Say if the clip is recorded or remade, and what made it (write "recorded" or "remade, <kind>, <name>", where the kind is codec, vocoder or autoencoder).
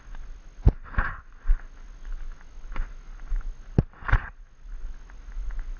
recorded